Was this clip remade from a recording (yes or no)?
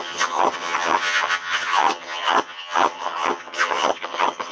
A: yes